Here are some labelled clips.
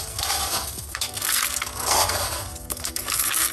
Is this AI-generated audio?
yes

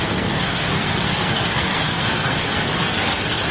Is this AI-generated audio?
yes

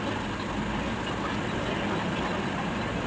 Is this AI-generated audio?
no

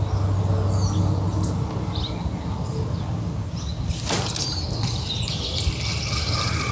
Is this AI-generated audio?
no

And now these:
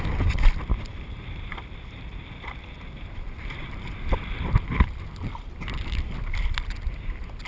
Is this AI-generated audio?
yes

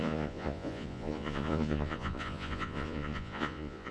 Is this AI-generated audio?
yes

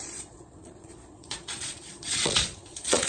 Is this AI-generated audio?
yes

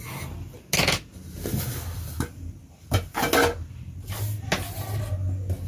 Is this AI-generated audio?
no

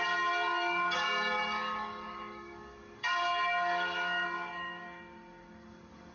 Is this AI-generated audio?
yes